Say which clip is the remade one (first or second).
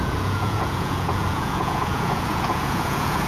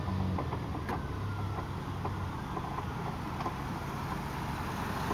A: first